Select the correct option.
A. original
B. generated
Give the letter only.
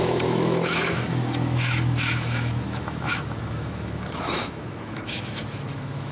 B